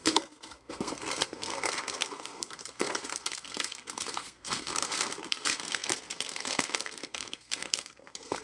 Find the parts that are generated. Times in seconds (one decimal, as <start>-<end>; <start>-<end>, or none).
0.0-8.4